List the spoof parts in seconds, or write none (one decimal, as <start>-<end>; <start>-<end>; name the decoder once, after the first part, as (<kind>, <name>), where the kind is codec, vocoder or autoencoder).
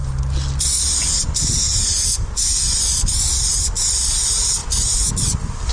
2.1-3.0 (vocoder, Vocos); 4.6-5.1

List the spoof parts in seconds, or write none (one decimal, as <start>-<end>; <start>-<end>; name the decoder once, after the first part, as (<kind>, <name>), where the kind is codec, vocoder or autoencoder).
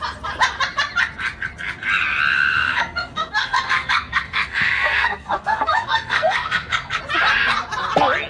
2.3-7.0 (codec, SNAC)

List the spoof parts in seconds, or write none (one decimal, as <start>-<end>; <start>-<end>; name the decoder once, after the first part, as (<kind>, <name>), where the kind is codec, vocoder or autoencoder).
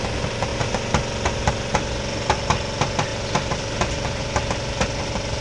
3.1-4.2 (vocoder, BigVGAN v2)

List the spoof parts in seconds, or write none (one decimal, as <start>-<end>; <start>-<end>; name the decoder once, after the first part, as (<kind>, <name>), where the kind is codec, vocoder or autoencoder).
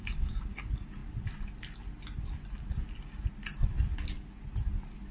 0.0-0.6 (codec, DAC)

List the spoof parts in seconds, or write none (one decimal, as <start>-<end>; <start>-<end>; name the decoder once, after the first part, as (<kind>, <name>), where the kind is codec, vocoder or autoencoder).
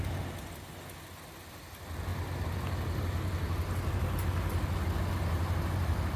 none